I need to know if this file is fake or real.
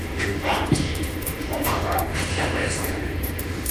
fake